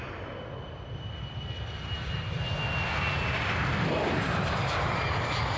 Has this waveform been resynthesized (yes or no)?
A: no